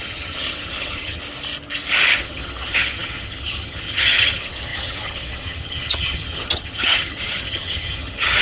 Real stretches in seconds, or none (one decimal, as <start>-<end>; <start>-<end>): 1.2-2.2